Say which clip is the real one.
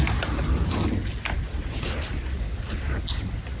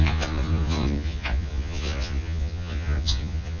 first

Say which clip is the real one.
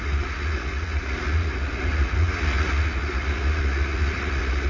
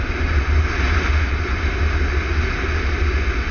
second